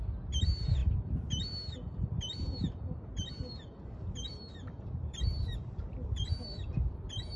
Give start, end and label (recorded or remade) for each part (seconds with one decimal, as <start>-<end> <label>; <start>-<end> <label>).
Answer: 0.0-7.4 recorded